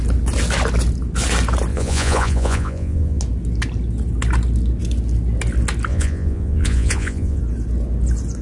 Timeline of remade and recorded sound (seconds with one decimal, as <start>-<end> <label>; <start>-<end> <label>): 0.0-1.7 recorded; 1.7-3.2 remade; 3.2-5.9 recorded; 5.9-7.4 remade; 7.4-8.4 recorded